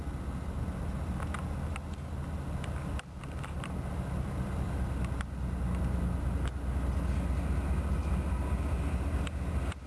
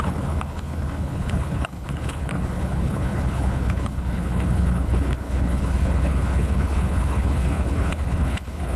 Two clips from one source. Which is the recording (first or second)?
first